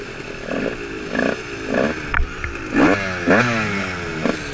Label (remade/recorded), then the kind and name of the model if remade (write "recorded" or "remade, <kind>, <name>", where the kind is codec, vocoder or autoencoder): recorded